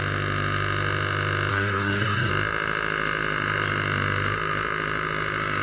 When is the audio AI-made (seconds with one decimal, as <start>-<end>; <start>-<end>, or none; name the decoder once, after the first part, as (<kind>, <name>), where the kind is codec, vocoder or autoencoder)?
1.5-2.3 (codec, SNAC)